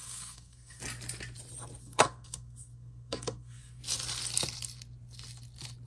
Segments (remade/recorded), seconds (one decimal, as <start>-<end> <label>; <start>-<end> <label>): 0.0-0.8 remade; 0.8-1.8 recorded; 1.8-3.8 remade; 3.8-5.9 recorded

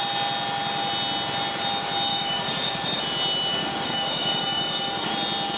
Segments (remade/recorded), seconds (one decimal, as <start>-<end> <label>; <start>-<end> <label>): 0.0-2.1 recorded; 2.1-3.0 remade; 3.0-3.5 recorded; 3.5-5.1 remade; 5.1-5.6 recorded

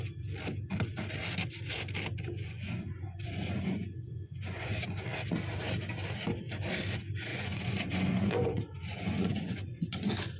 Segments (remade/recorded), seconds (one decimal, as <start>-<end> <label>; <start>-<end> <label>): 0.0-2.4 recorded; 2.4-4.8 remade; 4.8-7.3 recorded; 7.3-10.4 remade

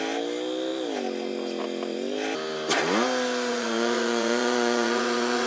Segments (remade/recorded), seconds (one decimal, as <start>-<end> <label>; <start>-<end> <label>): 0.0-3.5 recorded; 3.5-5.5 remade

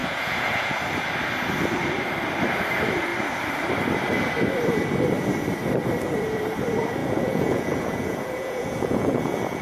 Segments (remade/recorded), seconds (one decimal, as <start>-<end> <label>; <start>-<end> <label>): 0.0-0.8 remade; 0.8-7.0 recorded; 7.0-9.6 remade